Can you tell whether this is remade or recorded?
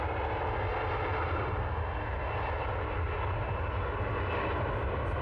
recorded